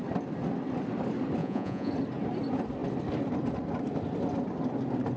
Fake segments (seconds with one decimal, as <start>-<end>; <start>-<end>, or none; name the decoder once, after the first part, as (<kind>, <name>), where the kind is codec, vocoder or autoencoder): 1.4-1.9 (vocoder, Vocos)